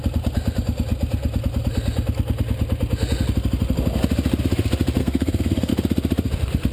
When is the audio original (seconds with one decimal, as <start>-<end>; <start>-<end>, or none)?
0.0-5.0; 5.7-6.7